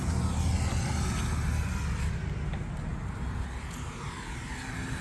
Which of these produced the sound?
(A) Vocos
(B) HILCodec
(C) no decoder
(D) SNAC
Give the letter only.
C